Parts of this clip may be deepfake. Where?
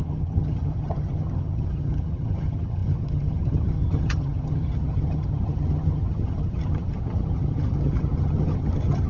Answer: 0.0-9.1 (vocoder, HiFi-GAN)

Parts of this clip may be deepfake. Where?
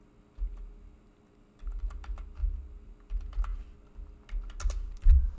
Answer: none